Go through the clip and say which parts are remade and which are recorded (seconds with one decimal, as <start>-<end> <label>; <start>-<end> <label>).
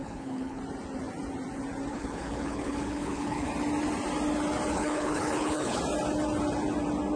0.0-0.6 remade; 0.6-1.9 recorded; 1.9-3.5 remade; 3.5-4.7 recorded; 4.7-5.8 remade; 5.8-7.2 recorded